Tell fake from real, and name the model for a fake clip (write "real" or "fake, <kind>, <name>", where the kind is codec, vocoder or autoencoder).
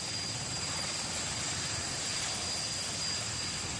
real